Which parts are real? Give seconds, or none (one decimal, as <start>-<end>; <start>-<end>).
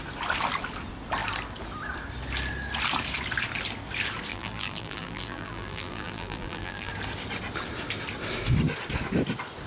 0.0-4.3; 6.9-9.7